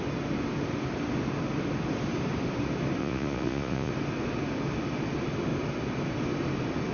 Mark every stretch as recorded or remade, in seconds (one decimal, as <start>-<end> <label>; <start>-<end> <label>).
0.0-3.0 recorded; 3.0-3.9 remade; 3.9-6.9 recorded